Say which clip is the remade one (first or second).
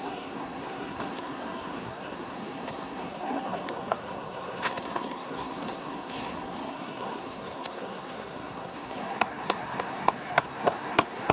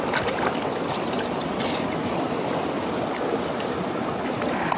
first